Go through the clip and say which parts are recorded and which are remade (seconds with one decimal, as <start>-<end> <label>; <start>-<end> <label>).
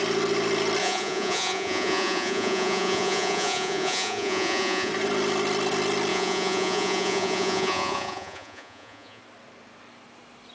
0.0-0.8 recorded; 0.8-4.9 remade; 4.9-6.1 recorded; 6.1-9.2 remade; 9.2-10.5 recorded